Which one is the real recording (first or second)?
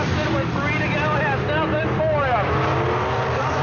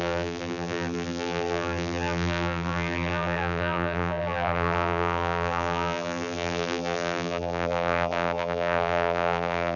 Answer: first